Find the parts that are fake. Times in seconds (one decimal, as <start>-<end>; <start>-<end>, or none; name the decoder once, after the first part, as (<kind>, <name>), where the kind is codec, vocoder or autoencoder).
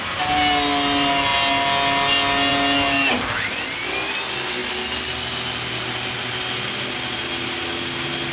none